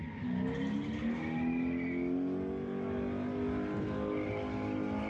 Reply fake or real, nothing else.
real